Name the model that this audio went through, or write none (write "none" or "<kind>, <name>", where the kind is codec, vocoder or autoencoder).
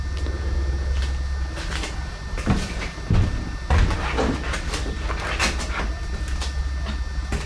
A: none